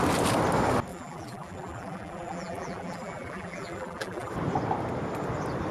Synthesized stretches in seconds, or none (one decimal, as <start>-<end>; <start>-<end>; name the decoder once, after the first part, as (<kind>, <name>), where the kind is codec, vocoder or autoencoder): 0.9-4.3 (vocoder, BigVGAN v2)